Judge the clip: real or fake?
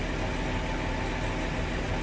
real